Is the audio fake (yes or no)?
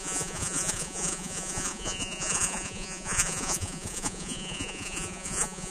yes